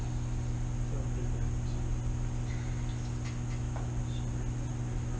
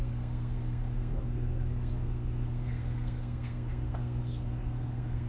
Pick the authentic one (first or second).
first